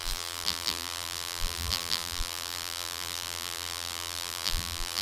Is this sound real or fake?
fake